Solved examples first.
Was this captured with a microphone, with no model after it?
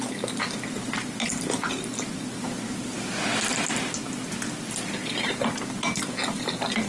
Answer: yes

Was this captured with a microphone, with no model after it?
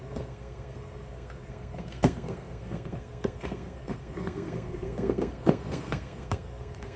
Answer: no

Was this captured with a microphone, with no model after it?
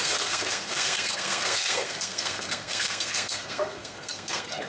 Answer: no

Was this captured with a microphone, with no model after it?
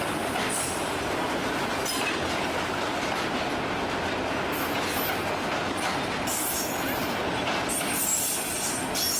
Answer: yes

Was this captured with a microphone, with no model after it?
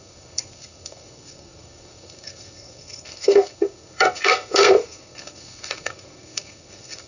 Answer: no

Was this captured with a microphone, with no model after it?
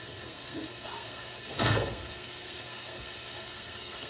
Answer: no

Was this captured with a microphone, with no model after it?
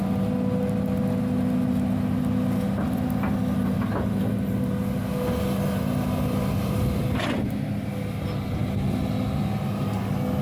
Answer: yes